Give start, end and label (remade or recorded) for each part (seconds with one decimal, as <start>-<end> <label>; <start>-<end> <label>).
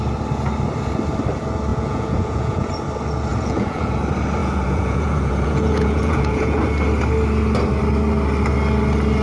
0.0-1.7 recorded; 1.7-2.7 remade; 2.7-3.3 recorded; 3.3-4.0 remade; 4.0-4.4 recorded; 4.4-6.6 remade; 6.6-9.2 recorded